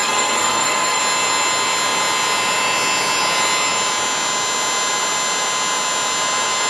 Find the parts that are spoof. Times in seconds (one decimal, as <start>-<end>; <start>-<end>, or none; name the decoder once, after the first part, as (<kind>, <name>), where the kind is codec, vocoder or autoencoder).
0.0-1.0 (codec, SNAC)